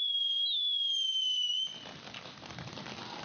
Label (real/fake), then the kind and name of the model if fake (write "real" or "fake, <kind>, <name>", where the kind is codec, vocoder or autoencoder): real